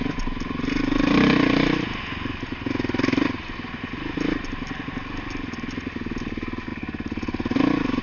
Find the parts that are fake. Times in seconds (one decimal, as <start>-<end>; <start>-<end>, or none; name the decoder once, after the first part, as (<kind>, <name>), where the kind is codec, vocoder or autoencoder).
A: none